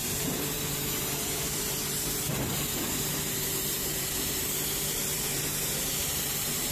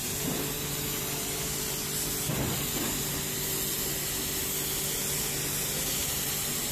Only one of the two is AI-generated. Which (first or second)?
first